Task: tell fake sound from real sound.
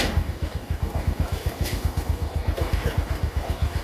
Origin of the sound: fake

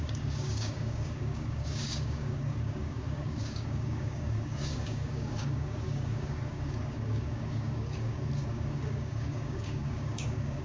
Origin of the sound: fake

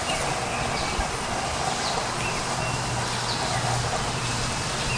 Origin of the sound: real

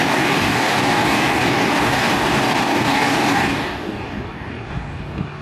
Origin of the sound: fake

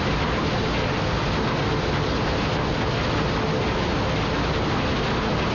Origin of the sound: real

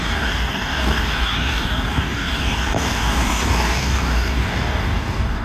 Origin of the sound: fake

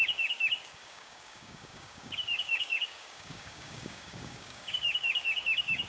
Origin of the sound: fake